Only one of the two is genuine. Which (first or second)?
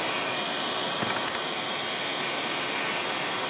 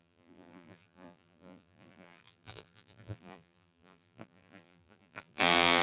first